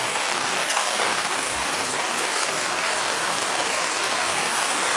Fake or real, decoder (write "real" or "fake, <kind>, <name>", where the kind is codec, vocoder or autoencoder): fake, codec, DAC